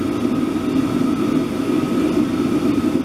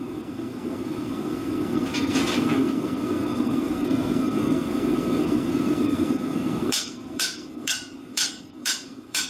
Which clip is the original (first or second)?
first